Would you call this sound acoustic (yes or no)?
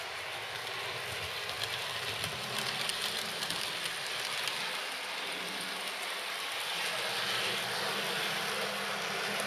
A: yes